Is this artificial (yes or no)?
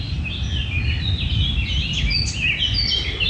no